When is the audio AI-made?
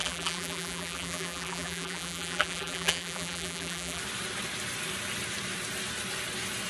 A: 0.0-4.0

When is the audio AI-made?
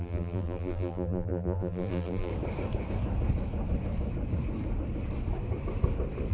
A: 0.0-2.3